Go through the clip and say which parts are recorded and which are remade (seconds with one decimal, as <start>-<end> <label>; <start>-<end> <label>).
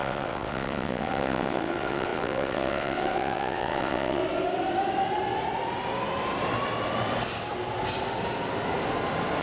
0.0-4.2 remade; 4.2-9.4 recorded